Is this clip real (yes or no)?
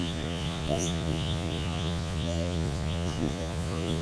no